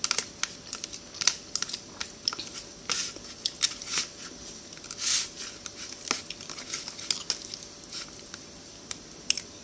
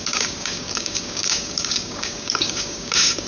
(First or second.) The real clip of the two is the first